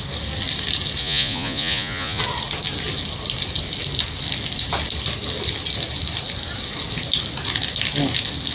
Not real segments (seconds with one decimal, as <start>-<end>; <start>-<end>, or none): 1.0-2.2